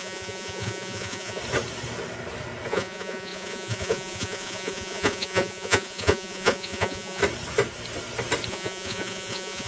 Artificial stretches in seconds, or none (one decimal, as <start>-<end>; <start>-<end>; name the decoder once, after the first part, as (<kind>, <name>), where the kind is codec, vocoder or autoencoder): 0.0-1.4 (vocoder, Vocos); 2.7-7.2; 8.5-9.7